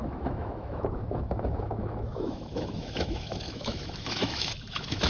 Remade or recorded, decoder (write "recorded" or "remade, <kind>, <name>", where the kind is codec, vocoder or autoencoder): remade, autoencoder, DAC-VAE